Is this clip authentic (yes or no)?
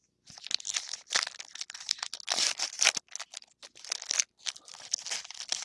yes